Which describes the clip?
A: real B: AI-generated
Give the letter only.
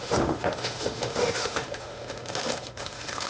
B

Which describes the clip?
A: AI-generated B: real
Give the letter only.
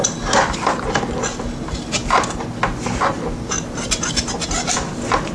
B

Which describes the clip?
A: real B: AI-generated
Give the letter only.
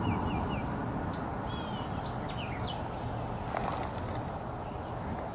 A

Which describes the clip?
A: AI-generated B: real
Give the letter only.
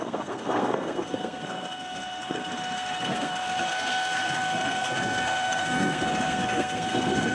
A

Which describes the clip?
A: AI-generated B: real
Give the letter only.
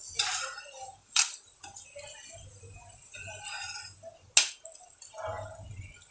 B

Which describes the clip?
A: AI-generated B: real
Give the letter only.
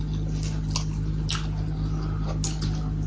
B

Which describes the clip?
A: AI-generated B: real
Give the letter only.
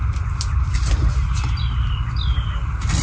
B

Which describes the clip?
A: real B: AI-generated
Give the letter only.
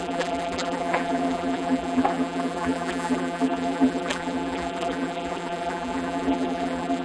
B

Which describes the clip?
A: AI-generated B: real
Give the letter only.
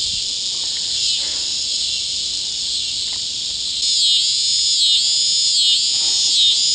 B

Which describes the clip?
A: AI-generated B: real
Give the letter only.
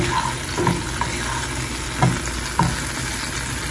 B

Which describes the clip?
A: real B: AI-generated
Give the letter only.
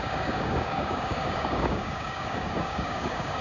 B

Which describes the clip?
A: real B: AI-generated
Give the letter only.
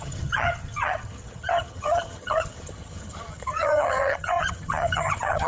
B